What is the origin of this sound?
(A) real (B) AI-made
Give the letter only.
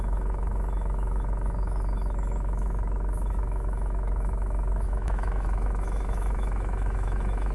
B